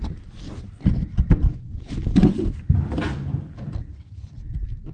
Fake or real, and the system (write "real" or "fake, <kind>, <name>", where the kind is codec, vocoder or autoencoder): real